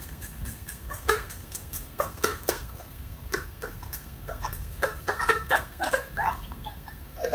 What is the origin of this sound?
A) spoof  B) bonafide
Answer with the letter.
A